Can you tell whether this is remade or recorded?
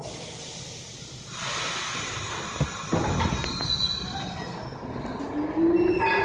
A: recorded